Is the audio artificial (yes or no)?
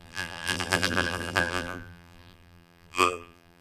yes